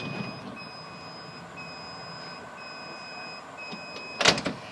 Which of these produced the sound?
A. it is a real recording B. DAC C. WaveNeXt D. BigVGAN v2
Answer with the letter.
A